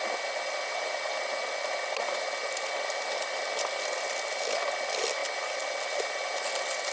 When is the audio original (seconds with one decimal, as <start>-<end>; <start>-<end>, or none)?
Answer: 0.0-6.9